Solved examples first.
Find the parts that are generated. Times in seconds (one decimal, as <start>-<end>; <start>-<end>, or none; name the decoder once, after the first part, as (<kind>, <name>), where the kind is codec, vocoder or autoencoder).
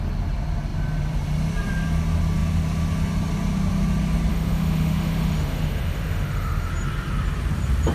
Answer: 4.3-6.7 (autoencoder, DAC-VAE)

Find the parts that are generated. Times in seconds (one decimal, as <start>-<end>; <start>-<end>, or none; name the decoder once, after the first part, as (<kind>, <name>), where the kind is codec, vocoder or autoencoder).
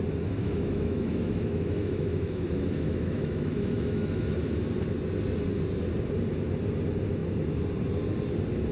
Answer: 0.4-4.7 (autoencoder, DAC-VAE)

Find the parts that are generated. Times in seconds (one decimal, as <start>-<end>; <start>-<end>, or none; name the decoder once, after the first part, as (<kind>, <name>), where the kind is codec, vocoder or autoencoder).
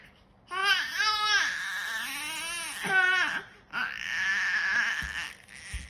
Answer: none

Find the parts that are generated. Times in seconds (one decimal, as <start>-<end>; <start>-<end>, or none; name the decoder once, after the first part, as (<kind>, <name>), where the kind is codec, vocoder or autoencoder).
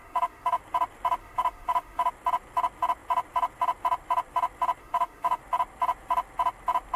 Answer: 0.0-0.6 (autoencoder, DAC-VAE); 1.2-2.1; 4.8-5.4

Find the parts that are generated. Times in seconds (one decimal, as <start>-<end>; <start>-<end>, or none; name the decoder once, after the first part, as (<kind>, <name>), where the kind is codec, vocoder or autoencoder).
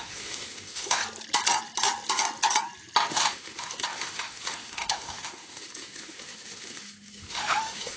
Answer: 0.0-1.0 (autoencoder, DAC-VAE); 3.1-8.0